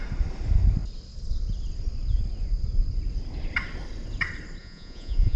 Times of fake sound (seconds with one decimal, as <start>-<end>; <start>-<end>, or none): 4.6-5.4